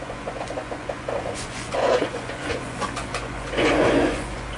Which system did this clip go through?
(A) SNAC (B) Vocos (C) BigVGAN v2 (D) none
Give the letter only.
B